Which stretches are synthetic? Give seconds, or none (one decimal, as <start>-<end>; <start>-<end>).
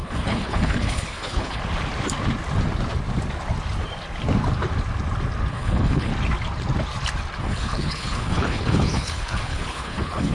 0.0-1.6; 5.5-6.1; 7.4-10.3